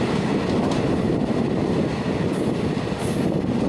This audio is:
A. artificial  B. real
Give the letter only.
B